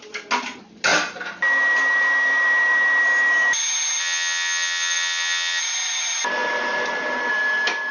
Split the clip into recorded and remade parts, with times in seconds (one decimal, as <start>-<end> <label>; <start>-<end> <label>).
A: 0.0-4.0 recorded; 4.0-5.6 remade; 5.6-7.9 recorded